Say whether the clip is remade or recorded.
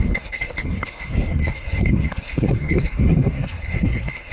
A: remade